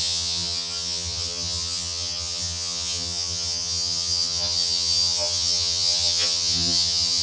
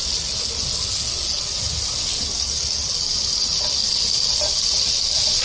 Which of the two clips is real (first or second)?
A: second